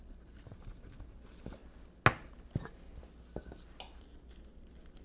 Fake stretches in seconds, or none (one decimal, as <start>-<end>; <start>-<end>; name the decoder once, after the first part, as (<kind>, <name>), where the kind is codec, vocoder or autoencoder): none